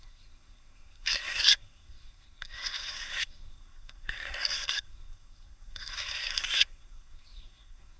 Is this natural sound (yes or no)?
no